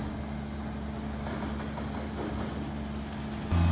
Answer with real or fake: real